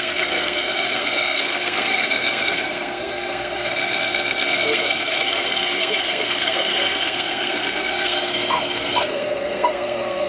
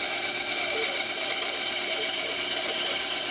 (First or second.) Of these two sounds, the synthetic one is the first